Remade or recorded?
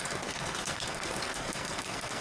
remade